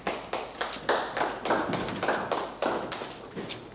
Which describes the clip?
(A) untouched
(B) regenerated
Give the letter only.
A